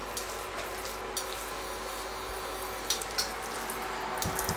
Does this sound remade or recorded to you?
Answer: recorded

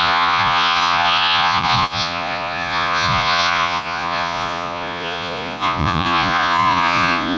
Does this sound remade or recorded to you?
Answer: remade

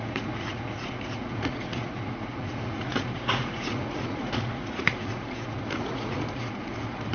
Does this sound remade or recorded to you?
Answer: remade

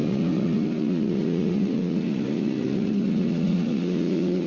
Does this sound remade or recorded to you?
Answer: remade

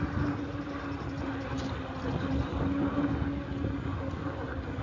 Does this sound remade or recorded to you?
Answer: recorded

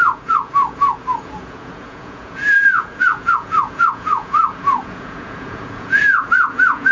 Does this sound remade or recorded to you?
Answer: remade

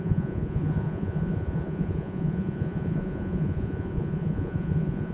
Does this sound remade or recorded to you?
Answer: remade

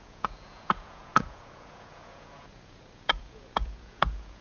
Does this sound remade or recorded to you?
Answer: remade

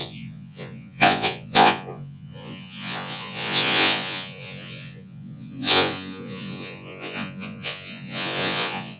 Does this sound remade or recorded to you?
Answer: remade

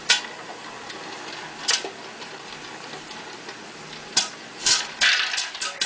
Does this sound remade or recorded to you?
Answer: recorded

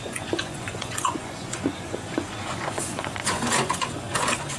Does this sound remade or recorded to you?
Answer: remade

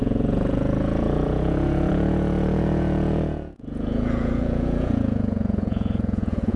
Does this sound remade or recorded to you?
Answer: remade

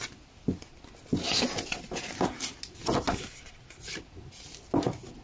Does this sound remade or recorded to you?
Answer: recorded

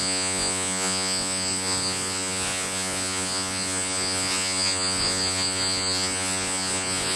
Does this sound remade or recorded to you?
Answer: remade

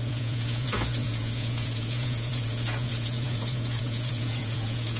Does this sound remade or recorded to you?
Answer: remade